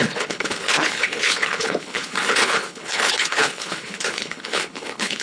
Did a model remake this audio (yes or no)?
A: yes